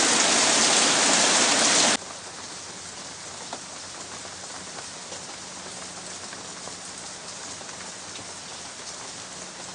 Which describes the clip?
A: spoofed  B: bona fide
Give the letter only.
B